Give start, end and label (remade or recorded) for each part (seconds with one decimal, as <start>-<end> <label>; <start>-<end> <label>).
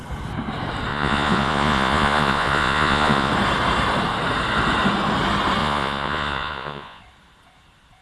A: 0.0-0.9 recorded; 0.9-3.3 remade; 3.3-5.6 recorded; 5.6-7.0 remade; 7.0-8.0 recorded